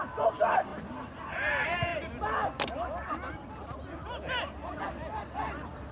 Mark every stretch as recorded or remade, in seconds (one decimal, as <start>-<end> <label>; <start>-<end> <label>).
0.0-5.9 recorded